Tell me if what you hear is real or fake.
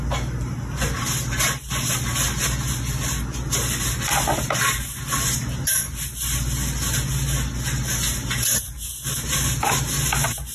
real